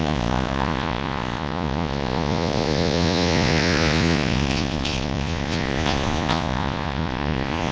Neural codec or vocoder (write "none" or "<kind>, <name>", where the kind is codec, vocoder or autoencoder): vocoder, Vocos